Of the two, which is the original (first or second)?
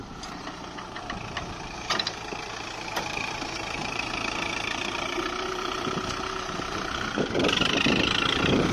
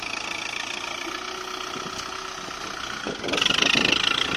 second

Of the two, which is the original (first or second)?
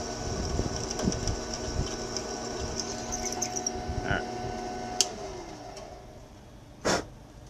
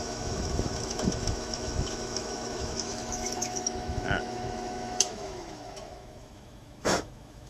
first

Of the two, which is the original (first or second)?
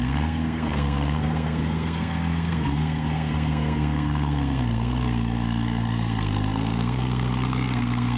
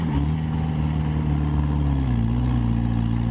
second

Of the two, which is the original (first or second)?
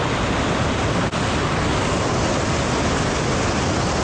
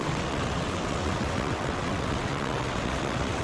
first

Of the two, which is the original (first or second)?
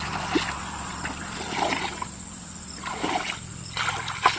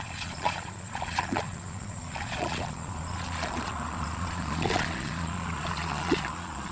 first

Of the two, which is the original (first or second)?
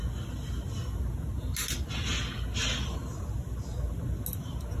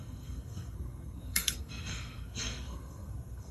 first